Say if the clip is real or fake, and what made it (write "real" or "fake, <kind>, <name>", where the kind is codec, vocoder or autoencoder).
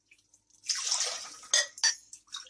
real